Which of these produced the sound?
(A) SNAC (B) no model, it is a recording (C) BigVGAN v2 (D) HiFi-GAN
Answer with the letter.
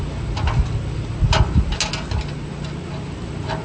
B